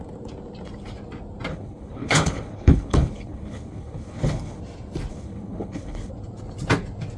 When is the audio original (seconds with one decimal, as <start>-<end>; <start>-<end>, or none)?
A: 0.0-1.5; 4.6-5.1; 6.1-7.2